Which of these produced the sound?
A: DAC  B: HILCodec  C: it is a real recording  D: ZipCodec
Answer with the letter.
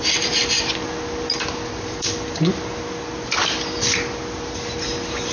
C